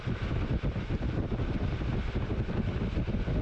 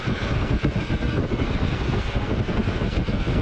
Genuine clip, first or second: first